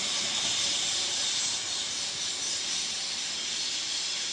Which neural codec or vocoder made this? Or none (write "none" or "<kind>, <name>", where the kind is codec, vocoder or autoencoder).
none